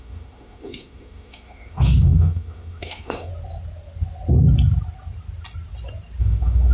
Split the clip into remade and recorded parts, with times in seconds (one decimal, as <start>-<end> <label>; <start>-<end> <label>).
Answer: 0.0-3.3 remade; 3.3-6.2 recorded; 6.2-6.7 remade